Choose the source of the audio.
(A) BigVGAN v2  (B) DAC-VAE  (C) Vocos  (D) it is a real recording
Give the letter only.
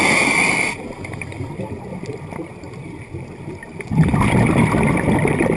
D